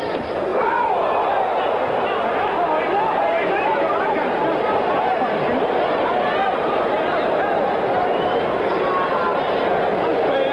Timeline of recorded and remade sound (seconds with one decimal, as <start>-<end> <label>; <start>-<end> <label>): 0.0-9.3 recorded; 9.3-9.9 remade; 9.9-10.5 recorded